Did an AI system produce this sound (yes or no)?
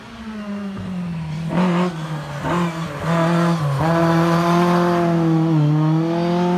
no